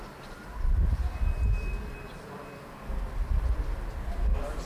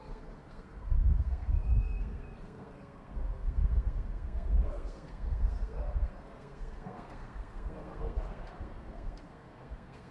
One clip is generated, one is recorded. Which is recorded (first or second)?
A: first